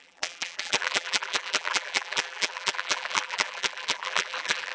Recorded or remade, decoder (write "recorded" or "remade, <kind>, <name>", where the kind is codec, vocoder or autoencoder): remade, vocoder, BigVGAN v2